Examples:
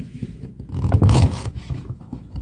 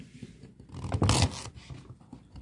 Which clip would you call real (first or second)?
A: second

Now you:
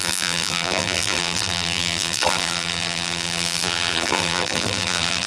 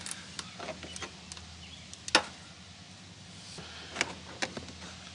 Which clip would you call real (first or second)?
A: second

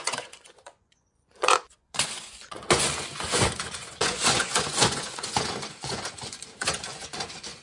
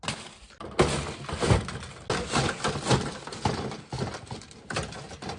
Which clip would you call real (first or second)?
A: second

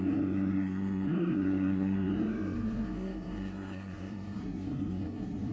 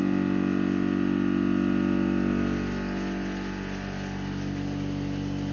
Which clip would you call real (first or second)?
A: second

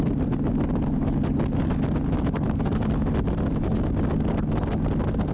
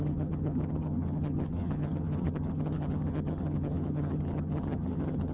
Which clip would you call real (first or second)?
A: first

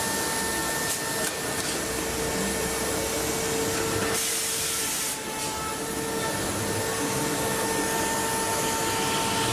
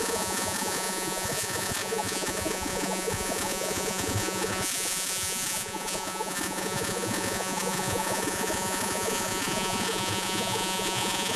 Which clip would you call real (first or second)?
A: first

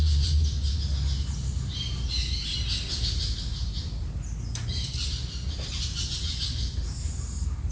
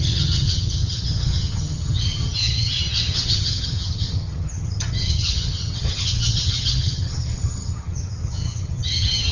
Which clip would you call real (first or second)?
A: first